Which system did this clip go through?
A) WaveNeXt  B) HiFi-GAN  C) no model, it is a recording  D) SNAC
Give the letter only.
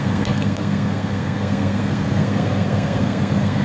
D